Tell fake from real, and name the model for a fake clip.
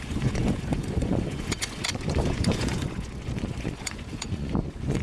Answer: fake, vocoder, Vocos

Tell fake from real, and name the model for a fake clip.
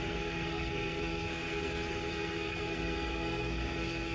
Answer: fake, codec, SNAC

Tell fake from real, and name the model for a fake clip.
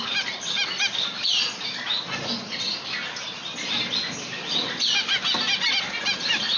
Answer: real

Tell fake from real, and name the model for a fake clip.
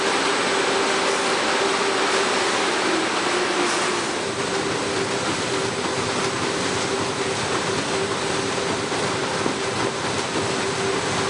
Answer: real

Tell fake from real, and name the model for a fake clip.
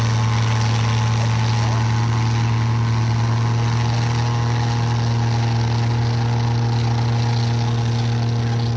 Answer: real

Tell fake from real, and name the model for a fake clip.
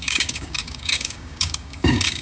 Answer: fake, codec, DAC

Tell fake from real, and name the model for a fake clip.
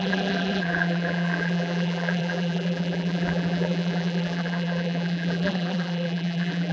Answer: fake, vocoder, BigVGAN v2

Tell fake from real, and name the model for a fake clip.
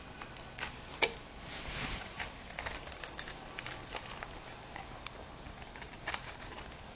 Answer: real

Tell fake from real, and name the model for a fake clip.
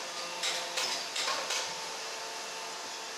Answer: real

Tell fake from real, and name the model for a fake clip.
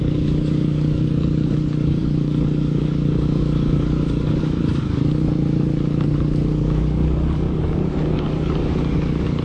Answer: fake, codec, DAC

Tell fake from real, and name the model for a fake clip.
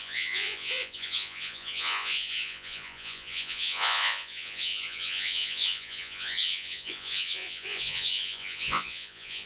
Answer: fake, vocoder, Vocos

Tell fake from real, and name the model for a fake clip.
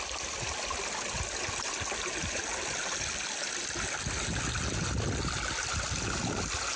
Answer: real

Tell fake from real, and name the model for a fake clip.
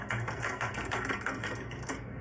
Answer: fake, codec, SNAC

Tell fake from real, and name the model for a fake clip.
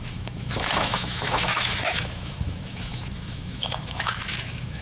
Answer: fake, autoencoder, DAC-VAE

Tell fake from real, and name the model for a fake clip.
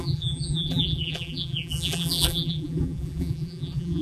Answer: fake, vocoder, BigVGAN v2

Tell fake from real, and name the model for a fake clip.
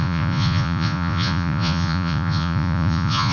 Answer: fake, vocoder, Vocos